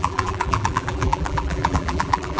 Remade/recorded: remade